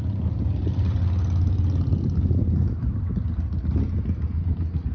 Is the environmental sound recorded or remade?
recorded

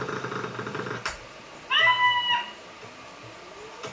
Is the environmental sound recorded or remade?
recorded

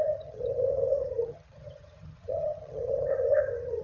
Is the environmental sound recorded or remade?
remade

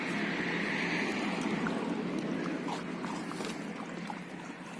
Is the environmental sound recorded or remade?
recorded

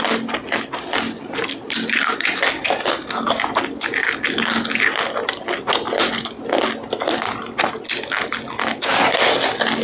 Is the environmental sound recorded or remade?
recorded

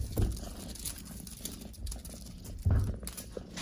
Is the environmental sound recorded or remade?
recorded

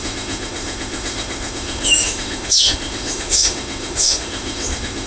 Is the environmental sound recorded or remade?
remade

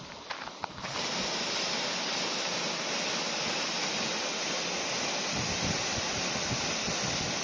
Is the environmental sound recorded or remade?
recorded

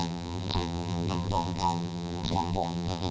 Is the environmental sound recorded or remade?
remade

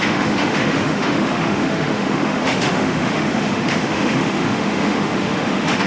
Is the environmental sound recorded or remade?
remade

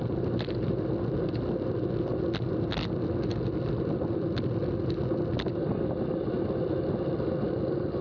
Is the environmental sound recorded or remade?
recorded